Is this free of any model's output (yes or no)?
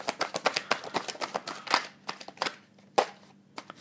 yes